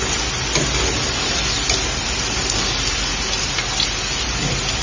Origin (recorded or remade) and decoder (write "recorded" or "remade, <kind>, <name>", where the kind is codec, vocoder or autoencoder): recorded